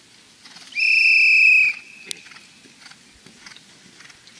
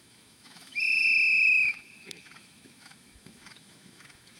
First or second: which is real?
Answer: first